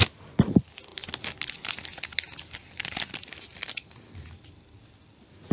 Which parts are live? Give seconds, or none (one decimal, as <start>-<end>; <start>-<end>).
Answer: 0.0-5.5